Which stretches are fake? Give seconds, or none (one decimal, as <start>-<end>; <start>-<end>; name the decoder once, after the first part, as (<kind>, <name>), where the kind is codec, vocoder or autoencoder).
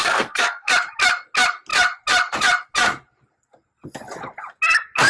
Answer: 0.0-0.7 (codec, SNAC)